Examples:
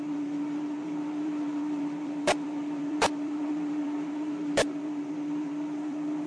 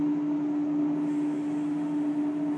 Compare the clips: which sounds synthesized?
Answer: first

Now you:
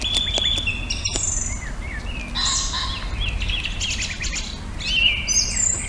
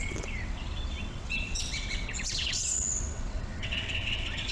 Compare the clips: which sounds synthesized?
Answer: second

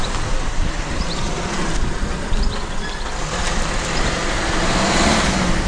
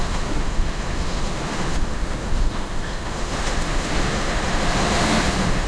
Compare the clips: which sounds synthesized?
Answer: second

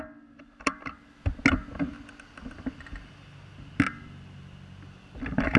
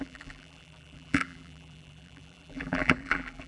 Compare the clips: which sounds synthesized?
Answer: second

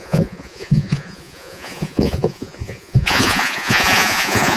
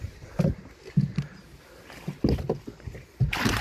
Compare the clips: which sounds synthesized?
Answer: first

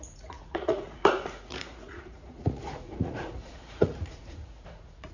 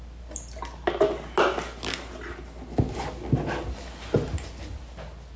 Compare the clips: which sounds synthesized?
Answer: first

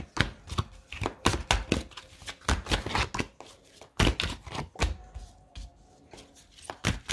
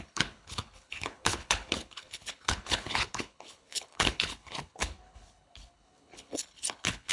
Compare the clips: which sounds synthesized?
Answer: second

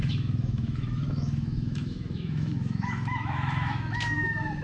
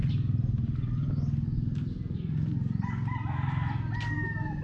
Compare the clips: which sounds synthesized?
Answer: first